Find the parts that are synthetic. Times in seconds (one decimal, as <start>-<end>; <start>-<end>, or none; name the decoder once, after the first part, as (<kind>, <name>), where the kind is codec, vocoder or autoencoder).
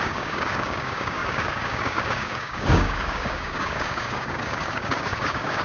0.0-5.6 (codec, DAC)